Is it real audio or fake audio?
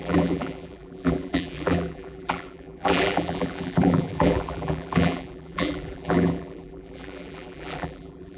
fake